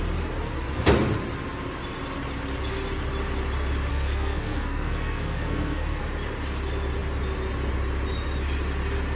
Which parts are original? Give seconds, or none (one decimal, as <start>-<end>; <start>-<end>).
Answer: 0.0-3.9; 6.0-9.2

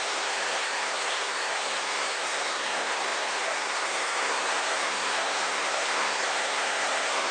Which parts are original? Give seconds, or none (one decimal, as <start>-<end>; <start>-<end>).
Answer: none

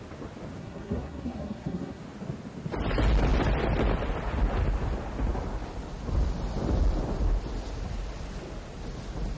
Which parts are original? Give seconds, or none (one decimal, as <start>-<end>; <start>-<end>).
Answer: 0.0-0.6; 2.0-9.4

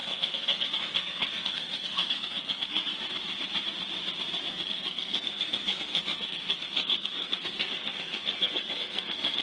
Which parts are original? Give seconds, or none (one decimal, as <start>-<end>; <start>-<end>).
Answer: 2.9-4.5